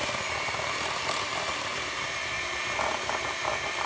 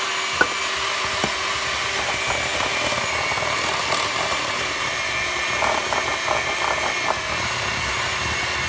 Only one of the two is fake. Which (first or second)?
first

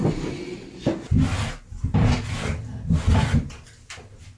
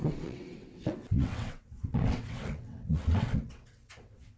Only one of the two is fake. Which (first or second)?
second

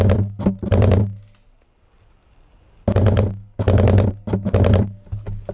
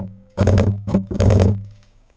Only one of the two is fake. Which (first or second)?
second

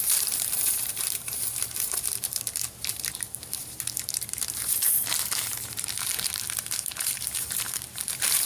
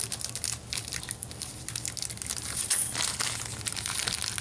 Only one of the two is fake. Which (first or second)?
first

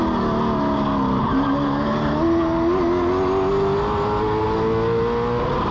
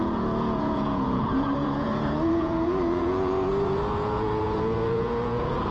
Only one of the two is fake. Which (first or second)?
second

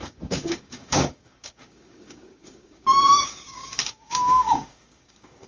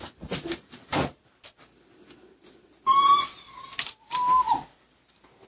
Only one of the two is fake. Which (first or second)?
first